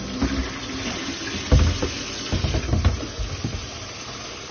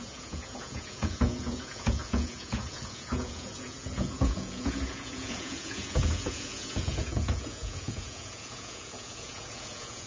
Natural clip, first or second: first